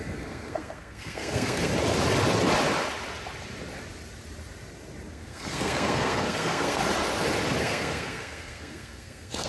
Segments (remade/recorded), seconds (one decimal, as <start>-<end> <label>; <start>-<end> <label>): 0.0-1.7 remade; 1.7-5.1 recorded; 5.1-6.8 remade; 6.8-7.6 recorded; 7.6-9.5 remade

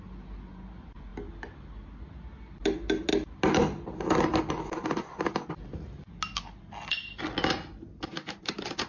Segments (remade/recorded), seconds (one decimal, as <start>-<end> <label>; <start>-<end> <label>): 0.0-8.9 recorded

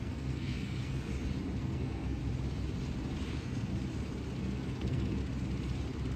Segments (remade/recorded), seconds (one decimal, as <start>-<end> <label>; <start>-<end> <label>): 0.0-1.1 remade; 1.1-1.6 recorded; 1.6-2.2 remade; 2.2-3.3 recorded; 3.3-3.7 remade; 3.7-4.4 recorded; 4.4-5.2 remade; 5.2-6.2 recorded